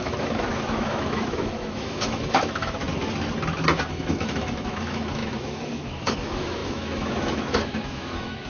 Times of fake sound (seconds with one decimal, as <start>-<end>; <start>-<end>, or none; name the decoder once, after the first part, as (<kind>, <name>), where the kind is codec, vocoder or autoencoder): 0.0-2.8 (autoencoder, DAC-VAE); 3.9-8.5